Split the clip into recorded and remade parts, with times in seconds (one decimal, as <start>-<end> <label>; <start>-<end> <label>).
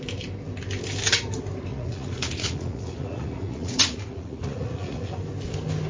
0.0-1.7 recorded; 1.7-5.2 remade; 5.2-5.9 recorded